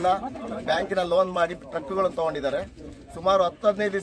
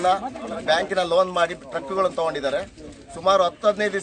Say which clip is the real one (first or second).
second